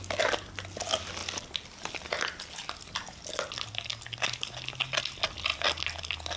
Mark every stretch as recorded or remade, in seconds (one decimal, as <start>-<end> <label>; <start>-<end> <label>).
0.0-6.4 recorded